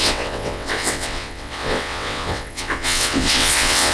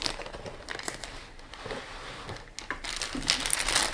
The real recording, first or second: second